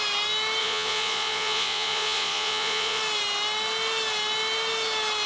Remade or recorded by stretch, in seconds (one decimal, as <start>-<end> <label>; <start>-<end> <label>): 0.0-0.6 recorded; 0.6-3.0 remade; 3.0-5.3 recorded